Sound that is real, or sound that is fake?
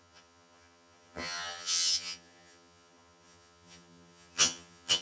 fake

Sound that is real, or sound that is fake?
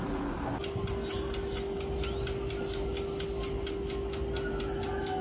real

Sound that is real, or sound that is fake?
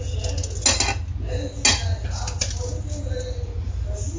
real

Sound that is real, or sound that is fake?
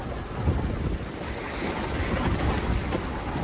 real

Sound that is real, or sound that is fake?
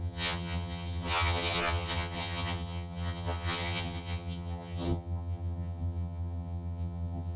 fake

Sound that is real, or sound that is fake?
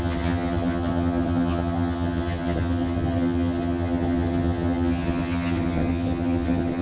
fake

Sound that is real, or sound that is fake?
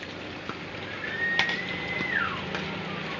real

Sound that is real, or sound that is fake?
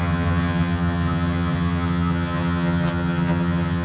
fake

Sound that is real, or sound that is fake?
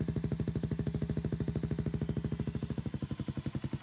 real